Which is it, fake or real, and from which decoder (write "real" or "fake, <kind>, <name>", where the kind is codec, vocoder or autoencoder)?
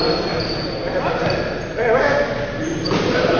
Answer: real